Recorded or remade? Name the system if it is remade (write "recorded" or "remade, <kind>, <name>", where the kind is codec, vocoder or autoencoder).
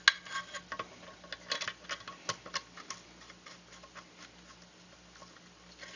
recorded